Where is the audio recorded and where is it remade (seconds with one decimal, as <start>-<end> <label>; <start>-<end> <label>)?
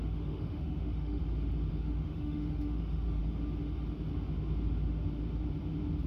0.0-1.2 remade; 1.2-1.7 recorded; 1.7-3.2 remade; 3.2-6.1 recorded